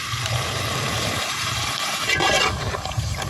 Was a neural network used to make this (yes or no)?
yes